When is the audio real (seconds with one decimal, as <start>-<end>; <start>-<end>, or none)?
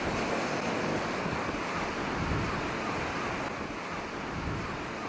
0.0-0.9; 1.5-5.1